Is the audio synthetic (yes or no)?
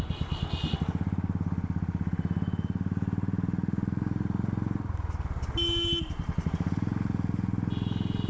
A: no